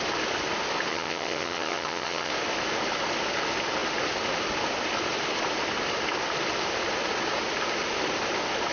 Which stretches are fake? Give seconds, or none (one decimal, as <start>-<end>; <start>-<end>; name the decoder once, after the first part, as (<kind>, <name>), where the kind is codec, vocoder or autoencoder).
0.9-2.3 (vocoder, HiFi-GAN)